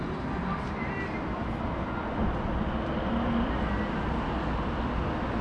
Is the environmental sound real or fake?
real